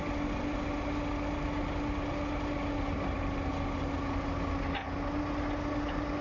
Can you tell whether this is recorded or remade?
recorded